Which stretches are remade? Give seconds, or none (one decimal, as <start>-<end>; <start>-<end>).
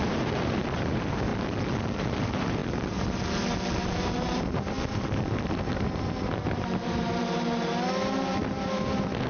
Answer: 0.0-1.3; 2.0-7.7; 8.4-9.3